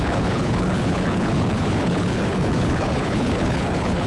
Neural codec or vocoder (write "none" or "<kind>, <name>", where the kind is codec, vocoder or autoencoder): codec, HILCodec